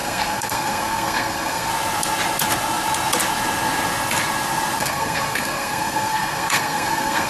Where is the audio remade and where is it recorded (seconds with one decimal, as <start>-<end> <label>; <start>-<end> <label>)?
0.0-1.7 remade; 1.7-4.8 recorded; 4.8-7.3 remade